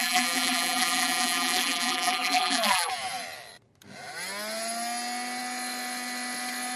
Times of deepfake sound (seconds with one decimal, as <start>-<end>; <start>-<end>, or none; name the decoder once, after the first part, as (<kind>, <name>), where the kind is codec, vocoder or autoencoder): 0.0-2.9 (vocoder, BigVGAN v2)